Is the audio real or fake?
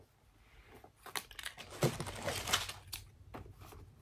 real